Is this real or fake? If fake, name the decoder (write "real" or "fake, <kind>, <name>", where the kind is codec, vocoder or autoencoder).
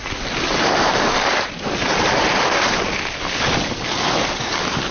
real